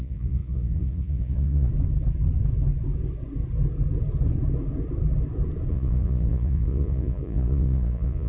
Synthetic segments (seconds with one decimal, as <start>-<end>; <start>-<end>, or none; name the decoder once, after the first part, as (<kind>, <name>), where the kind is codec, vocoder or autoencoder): 0.0-1.7 (vocoder, Vocos); 5.7-8.3